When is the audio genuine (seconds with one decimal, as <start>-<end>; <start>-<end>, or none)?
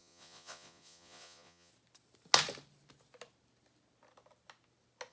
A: 1.7-5.1